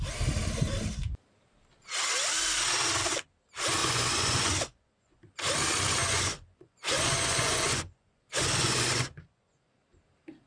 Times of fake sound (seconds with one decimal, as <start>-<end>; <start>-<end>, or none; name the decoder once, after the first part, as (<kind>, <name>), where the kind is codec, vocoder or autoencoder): 3.8-5.2 (vocoder, Vocos); 6.0-9.7